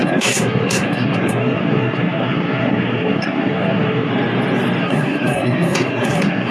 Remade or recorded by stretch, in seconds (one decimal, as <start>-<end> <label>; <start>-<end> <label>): 0.0-4.1 remade; 4.1-4.8 recorded; 4.8-6.5 remade